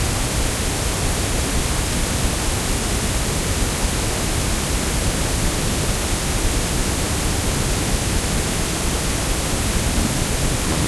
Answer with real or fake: real